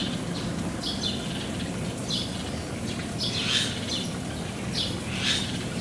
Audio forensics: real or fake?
real